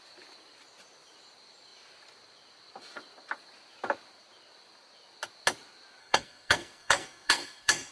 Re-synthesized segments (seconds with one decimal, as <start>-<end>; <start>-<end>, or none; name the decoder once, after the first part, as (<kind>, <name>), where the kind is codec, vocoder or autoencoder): 6.0-7.9 (codec, SNAC)